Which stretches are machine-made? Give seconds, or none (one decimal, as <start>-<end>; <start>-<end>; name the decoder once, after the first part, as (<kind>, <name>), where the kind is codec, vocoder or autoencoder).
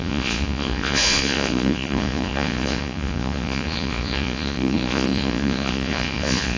0.0-6.6 (vocoder, Vocos)